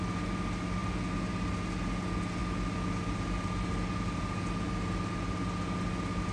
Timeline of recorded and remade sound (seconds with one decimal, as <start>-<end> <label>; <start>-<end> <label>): 0.0-6.3 recorded